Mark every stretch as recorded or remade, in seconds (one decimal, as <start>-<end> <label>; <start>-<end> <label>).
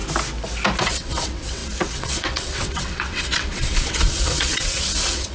0.0-0.8 recorded; 0.8-5.3 remade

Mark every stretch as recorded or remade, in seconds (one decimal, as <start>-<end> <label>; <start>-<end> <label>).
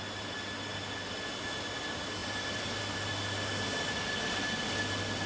0.0-5.3 recorded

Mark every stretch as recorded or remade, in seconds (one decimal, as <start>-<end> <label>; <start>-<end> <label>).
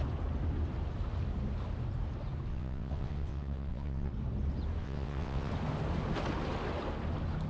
0.0-2.5 recorded; 2.5-4.1 remade; 4.1-4.8 recorded; 4.8-5.5 remade; 5.5-7.5 recorded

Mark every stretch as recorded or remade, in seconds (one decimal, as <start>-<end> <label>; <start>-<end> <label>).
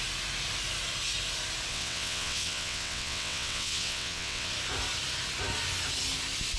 0.0-1.7 recorded; 1.7-4.5 remade; 4.5-6.6 recorded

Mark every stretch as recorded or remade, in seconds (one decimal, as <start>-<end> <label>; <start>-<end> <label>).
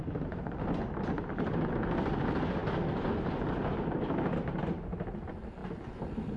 0.0-6.4 recorded